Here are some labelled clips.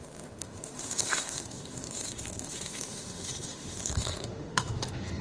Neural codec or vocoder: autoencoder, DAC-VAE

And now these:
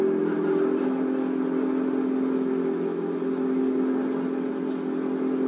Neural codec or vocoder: none